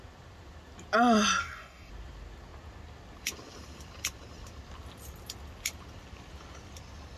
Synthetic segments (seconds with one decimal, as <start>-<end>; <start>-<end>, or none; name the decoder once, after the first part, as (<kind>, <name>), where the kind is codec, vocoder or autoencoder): 1.4-1.9 (codec, DAC)